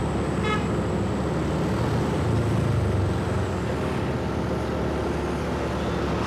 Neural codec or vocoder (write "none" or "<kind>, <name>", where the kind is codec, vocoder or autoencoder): none